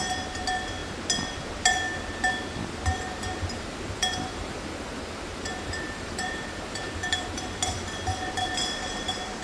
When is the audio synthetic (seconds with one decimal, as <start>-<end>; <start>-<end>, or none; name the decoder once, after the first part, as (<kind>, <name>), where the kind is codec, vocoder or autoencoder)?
2.9-7.6 (vocoder, BigVGAN v2)